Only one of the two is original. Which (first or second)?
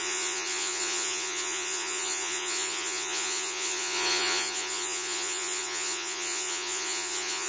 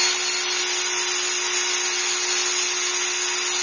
second